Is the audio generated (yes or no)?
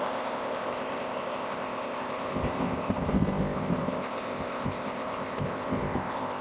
yes